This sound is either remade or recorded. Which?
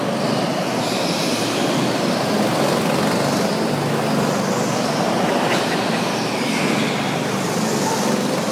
recorded